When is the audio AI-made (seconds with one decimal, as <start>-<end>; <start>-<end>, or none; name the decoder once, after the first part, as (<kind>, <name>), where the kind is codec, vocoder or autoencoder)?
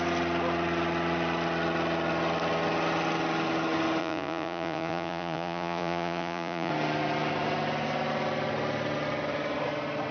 4.0-6.7 (vocoder, Vocos)